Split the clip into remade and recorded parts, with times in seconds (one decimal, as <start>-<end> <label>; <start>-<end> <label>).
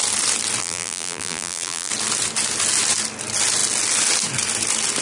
0.0-0.6 recorded; 0.6-1.9 remade; 1.9-5.0 recorded